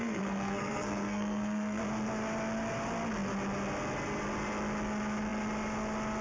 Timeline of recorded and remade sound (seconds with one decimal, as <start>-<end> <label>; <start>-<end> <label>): 0.0-1.8 remade; 1.8-6.2 recorded